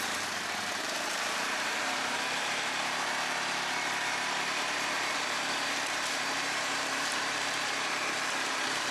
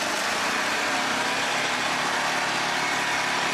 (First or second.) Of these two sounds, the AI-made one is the first